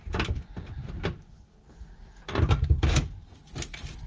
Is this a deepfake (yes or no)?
no